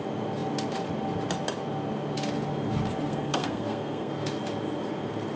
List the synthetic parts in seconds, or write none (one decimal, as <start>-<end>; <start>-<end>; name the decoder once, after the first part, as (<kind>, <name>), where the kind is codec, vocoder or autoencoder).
3.1-4.1 (codec, SNAC)